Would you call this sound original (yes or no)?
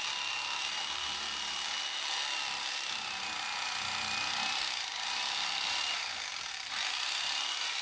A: no